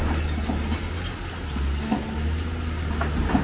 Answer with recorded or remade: recorded